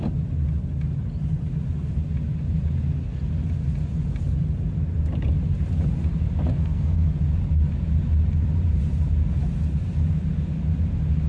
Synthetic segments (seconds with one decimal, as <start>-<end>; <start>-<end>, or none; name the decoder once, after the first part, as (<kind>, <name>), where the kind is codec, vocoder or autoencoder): 6.5-7.1 (codec, SNAC)